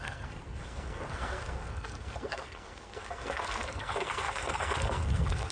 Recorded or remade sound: remade